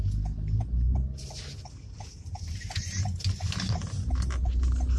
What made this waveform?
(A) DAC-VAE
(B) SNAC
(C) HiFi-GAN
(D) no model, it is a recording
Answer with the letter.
D